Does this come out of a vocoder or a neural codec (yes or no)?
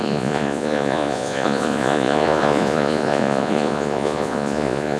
yes